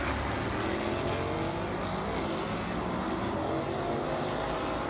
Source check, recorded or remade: recorded